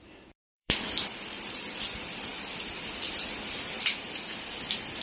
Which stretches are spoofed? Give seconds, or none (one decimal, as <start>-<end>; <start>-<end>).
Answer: 0.0-5.0